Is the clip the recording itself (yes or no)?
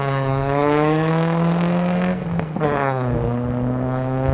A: no